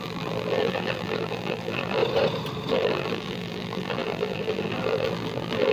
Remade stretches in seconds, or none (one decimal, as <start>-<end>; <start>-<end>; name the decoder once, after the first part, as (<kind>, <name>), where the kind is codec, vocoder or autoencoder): 0.0-2.0 (vocoder, BigVGAN v2); 2.7-5.7